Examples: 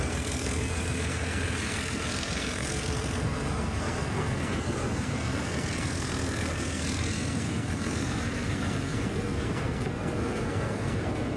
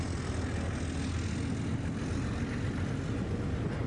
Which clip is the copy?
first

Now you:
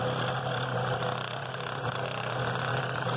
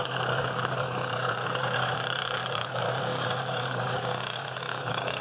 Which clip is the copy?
second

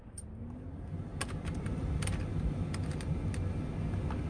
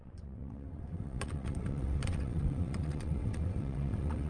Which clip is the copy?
second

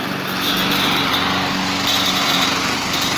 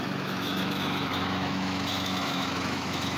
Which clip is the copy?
second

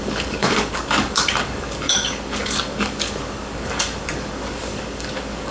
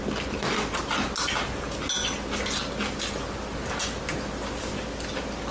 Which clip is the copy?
first